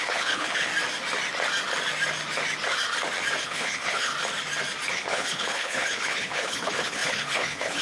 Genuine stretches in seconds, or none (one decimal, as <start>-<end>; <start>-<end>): 0.7-3.4; 4.1-4.9